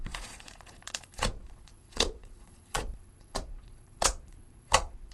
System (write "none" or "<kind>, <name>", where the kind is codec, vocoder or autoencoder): vocoder, Vocos